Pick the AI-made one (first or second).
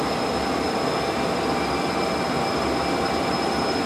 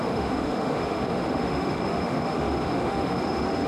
second